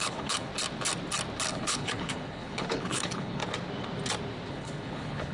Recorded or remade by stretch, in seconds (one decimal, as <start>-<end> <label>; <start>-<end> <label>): 0.0-0.5 remade; 0.5-1.5 recorded; 1.5-3.4 remade; 3.4-4.5 recorded; 4.5-5.3 remade